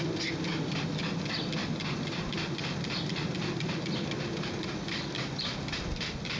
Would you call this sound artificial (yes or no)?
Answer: no